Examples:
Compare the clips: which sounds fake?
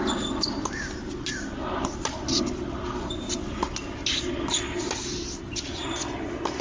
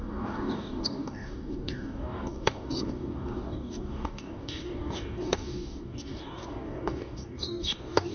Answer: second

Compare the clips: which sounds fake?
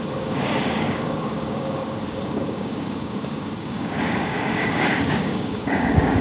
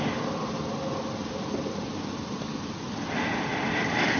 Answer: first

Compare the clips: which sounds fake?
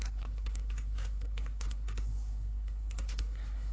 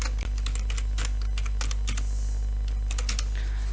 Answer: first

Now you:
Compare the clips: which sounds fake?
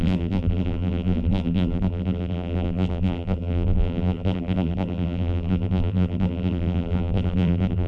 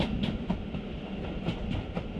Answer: first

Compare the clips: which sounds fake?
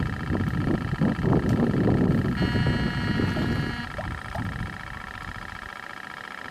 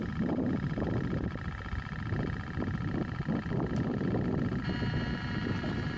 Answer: second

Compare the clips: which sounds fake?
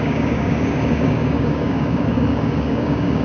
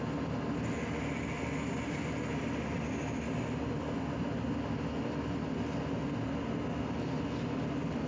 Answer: first